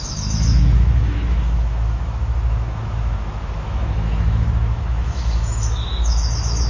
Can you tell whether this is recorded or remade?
remade